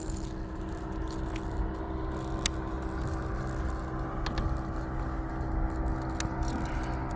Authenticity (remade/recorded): recorded